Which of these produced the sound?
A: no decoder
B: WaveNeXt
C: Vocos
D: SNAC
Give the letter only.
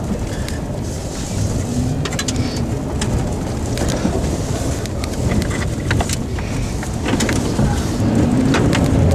A